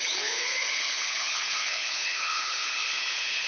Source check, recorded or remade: remade